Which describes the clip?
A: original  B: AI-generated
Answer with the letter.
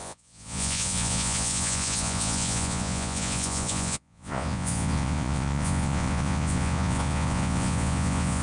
B